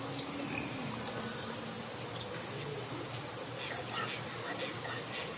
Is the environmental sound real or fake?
real